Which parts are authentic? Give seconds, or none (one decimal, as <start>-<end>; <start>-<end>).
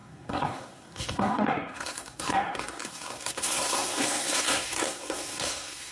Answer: none